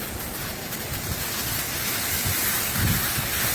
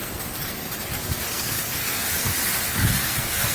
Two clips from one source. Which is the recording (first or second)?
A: first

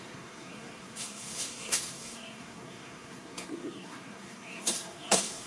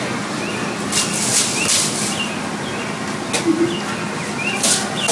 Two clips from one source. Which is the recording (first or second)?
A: second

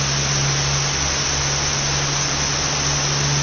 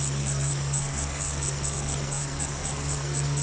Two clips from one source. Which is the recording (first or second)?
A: first